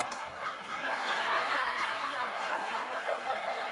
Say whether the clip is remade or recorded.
remade